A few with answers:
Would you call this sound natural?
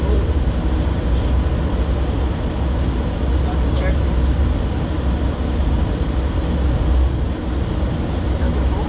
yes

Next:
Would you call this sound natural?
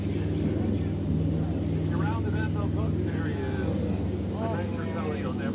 yes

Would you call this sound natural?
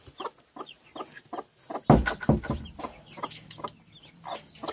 yes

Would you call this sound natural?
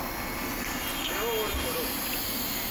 yes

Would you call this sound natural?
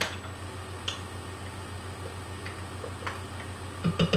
yes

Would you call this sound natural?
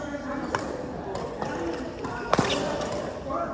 yes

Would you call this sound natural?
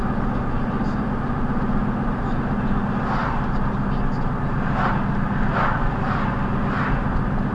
yes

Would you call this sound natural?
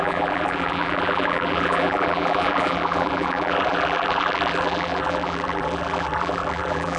no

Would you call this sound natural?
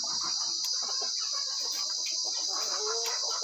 yes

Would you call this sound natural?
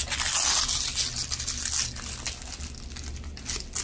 yes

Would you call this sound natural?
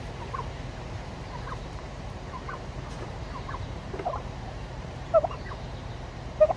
no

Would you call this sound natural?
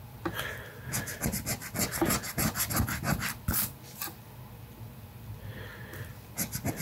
yes